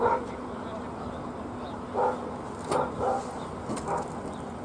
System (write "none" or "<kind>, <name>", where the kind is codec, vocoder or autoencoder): none